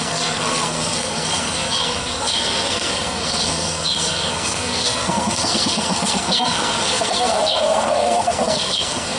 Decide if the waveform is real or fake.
fake